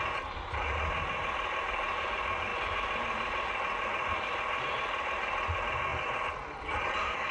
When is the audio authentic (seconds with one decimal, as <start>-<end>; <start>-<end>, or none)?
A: 0.0-2.5; 4.6-5.9